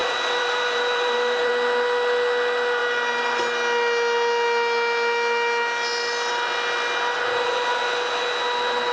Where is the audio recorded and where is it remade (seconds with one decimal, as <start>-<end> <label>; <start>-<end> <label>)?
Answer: 0.0-1.5 remade; 1.5-8.9 recorded

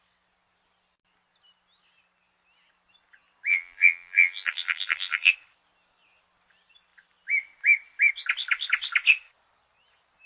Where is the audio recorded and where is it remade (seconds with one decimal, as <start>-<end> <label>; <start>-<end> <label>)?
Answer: 0.0-3.5 recorded; 3.5-5.3 remade; 5.3-10.3 recorded

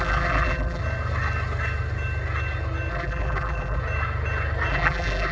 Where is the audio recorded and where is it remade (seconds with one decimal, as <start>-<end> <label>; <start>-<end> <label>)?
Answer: 0.0-0.8 remade; 0.8-2.9 recorded; 2.9-3.8 remade; 3.8-4.7 recorded; 4.7-5.3 remade

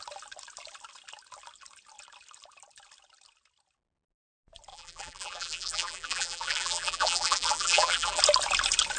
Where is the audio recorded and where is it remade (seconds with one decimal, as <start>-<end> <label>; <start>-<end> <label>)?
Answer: 0.0-4.7 recorded; 4.7-8.2 remade; 8.2-9.0 recorded

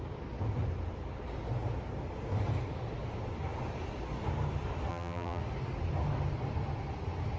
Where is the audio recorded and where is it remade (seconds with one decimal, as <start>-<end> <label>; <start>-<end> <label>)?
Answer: 0.0-4.9 recorded; 4.9-5.4 remade; 5.4-7.4 recorded

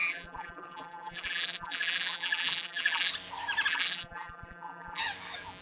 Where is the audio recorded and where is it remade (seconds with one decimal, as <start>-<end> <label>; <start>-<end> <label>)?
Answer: 0.0-3.1 remade; 3.1-3.7 recorded; 3.7-5.0 remade; 5.0-5.6 recorded